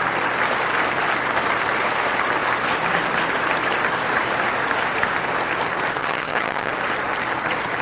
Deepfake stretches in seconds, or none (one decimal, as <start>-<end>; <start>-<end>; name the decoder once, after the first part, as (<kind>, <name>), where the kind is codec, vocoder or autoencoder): 6.0-6.7 (vocoder, HiFi-GAN)